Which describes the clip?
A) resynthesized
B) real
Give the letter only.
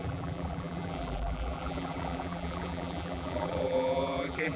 A